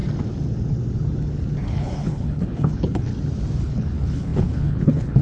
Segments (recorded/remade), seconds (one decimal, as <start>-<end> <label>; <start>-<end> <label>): 0.0-1.7 recorded; 1.7-3.1 remade; 3.1-3.6 recorded; 3.6-5.2 remade